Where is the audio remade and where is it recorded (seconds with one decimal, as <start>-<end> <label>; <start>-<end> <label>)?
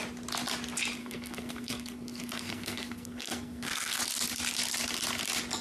0.0-1.0 recorded; 1.0-4.0 remade; 4.0-5.6 recorded